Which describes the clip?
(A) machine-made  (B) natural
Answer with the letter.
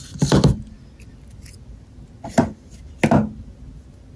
B